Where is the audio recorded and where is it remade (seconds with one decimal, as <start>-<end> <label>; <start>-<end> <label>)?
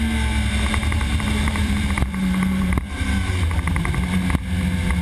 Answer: 0.0-0.8 recorded; 0.8-2.8 remade; 2.8-5.0 recorded